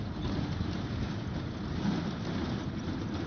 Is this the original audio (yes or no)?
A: yes